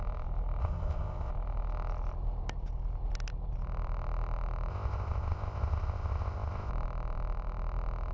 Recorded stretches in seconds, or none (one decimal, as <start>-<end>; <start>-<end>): 0.0-0.6; 1.3-4.7; 6.7-8.1

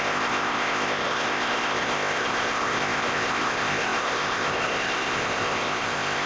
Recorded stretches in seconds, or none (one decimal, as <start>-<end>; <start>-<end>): none

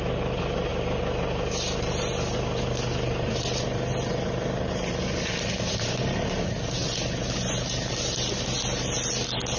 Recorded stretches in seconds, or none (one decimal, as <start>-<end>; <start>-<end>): 0.0-9.6

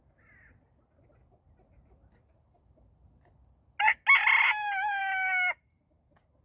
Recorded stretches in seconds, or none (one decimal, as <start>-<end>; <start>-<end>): 0.0-6.4

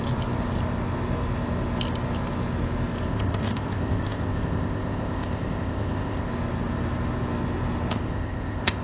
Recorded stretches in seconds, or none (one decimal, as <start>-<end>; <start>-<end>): 0.0-3.1; 6.3-7.9